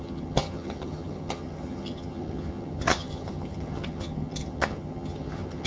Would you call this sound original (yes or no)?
no